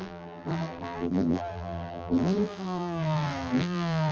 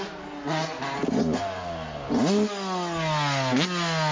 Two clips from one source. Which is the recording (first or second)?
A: second